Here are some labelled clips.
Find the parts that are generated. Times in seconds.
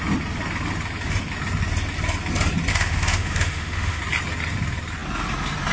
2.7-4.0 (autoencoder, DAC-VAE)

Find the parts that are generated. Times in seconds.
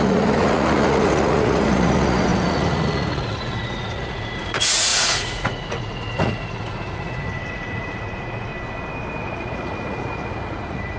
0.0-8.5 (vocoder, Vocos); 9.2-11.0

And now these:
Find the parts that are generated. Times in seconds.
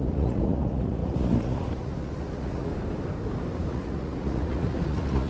0.0-2.7 (vocoder, Vocos); 3.7-5.3